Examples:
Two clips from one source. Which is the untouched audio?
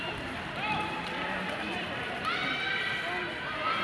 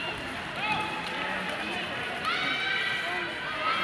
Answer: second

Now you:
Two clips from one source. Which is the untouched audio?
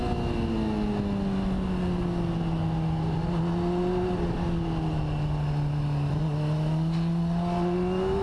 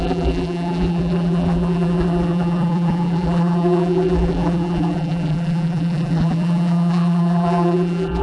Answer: first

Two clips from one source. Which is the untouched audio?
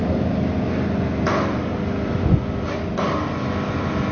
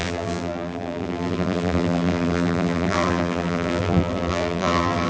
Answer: first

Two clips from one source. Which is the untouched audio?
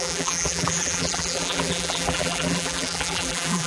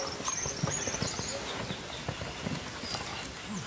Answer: second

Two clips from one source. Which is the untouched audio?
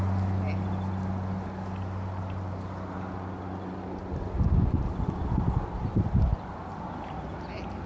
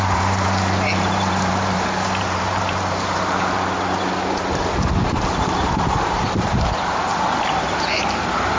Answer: first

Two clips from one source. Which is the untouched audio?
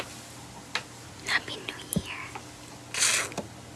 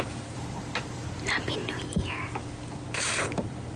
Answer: first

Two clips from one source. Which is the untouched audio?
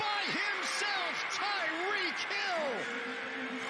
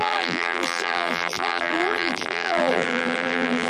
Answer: first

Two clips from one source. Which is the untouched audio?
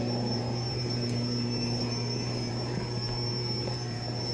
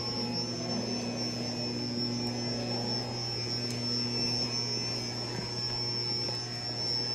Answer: second